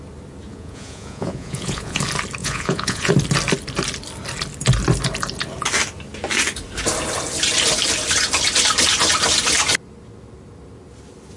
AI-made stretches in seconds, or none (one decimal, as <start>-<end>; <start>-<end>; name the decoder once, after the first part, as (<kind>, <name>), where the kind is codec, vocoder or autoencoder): 0.5-2.0 (vocoder, Vocos); 2.4-3.1